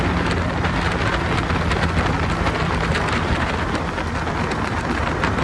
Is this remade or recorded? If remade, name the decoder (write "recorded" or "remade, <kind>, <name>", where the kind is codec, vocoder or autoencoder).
recorded